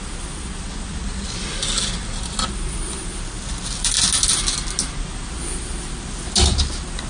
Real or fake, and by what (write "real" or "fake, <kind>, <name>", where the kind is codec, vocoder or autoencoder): real